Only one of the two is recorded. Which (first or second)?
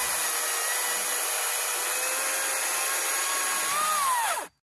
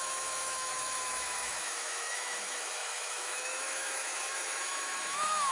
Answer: first